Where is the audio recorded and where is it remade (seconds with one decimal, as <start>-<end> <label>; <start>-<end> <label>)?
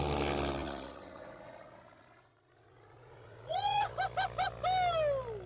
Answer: 0.0-0.6 recorded; 0.6-3.9 remade; 3.9-5.5 recorded